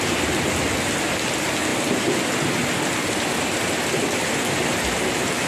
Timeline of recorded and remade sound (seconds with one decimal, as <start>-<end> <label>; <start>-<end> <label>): 0.0-1.7 recorded; 1.7-5.0 remade; 5.0-5.5 recorded